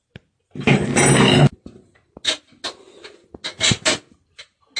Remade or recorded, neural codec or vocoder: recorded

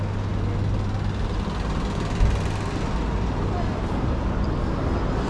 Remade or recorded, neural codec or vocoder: recorded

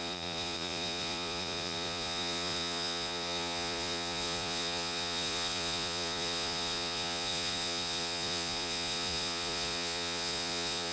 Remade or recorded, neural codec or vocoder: remade, vocoder, Vocos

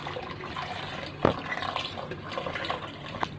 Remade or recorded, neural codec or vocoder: recorded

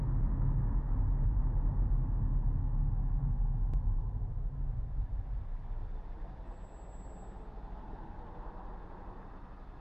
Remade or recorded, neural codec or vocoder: recorded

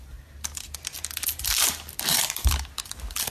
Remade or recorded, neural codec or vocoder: recorded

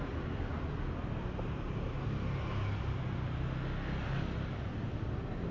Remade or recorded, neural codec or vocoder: recorded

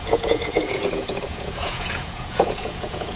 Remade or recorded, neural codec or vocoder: remade, vocoder, Vocos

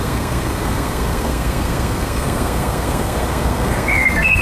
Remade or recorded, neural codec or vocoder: remade, codec, SNAC